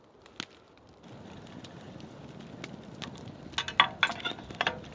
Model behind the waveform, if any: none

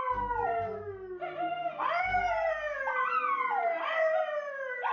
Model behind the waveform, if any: none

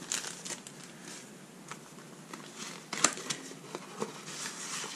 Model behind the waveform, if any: none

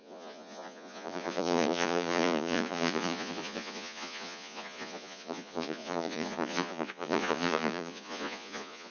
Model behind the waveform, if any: vocoder, Vocos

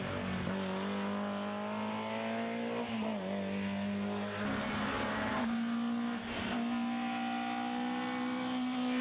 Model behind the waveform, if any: none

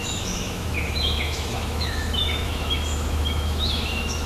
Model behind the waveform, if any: autoencoder, DAC-VAE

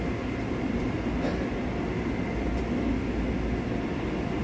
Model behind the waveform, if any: none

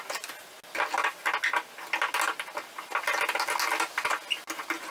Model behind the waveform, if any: none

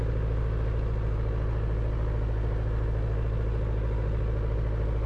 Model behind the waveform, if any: none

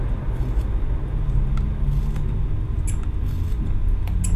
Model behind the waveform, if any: none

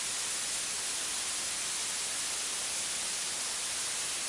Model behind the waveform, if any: none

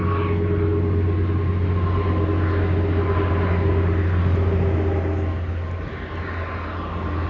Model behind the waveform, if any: none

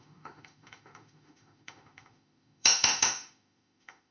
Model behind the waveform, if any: autoencoder, DAC-VAE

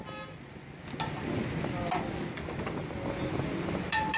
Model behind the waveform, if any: none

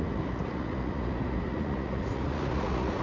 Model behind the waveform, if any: vocoder, Vocos